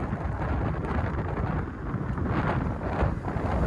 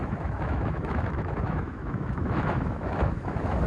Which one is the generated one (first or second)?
second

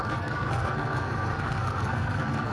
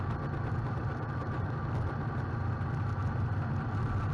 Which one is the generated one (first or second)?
first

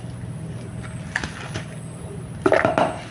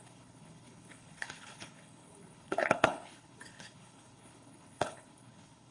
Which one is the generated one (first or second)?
second